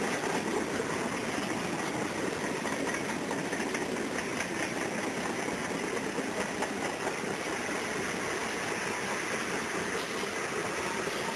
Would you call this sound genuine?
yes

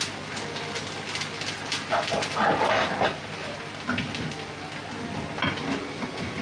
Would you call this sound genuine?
yes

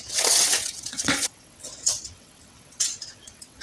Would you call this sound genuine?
no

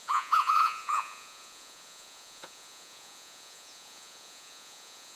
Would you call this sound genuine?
no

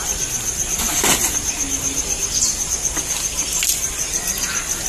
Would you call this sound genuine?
yes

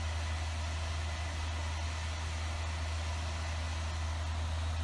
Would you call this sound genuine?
yes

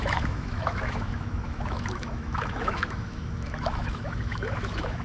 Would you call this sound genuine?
no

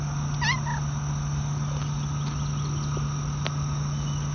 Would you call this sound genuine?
yes